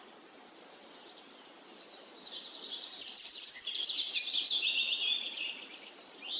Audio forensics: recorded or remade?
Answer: remade